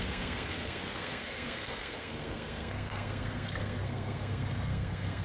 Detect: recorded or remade remade